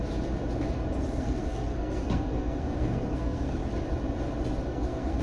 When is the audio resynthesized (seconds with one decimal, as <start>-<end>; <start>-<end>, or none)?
1.0-3.6; 4.7-5.2